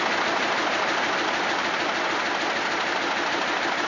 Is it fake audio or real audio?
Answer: real